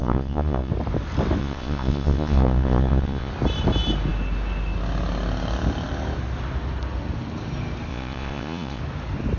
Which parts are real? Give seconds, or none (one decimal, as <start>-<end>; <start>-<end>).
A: 0.7-1.4; 3.3-7.9; 8.8-9.4